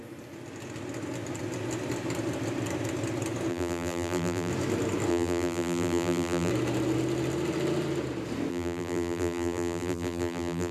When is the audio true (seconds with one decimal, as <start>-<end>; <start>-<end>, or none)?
0.0-3.5; 4.5-5.1; 6.5-8.5